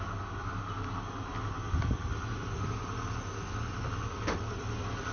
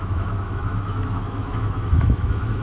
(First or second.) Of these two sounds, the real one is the first